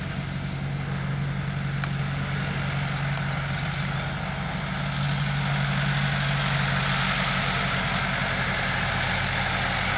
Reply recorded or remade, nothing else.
recorded